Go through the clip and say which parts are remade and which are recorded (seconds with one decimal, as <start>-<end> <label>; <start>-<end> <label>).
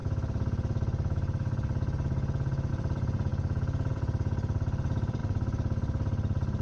0.0-2.7 recorded; 2.7-3.3 remade; 3.3-3.9 recorded; 3.9-5.2 remade; 5.2-6.6 recorded